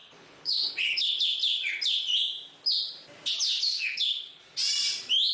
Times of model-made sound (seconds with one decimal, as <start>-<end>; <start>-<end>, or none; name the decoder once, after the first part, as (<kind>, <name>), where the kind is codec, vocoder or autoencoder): 0.0-1.2 (codec, HILCodec); 3.7-4.4

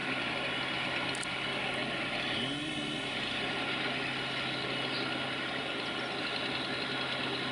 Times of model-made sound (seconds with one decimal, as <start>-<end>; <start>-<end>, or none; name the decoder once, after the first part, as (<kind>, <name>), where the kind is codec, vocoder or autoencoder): none

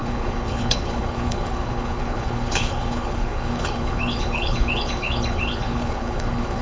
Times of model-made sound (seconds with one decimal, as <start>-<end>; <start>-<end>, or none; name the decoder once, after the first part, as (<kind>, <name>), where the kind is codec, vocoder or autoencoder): 0.0-6.6 (codec, HILCodec)

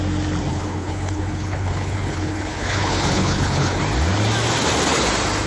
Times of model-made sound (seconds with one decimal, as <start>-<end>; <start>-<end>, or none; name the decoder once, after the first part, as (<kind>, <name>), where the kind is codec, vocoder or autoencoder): 0.5-3.8 (codec, HILCodec)

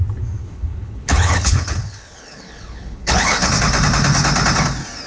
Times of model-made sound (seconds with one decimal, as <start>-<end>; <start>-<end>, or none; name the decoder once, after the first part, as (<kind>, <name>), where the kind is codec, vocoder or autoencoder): 0.4-3.5 (codec, HILCodec)

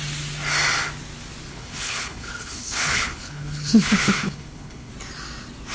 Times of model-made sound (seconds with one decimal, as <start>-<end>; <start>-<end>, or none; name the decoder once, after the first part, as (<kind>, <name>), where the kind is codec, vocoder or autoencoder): 1.5-4.9 (codec, HILCodec)

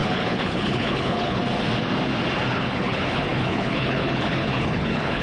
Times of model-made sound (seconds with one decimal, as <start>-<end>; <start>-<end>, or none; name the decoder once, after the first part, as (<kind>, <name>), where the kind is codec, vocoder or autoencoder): 0.0-1.4 (codec, HILCodec); 2.5-5.2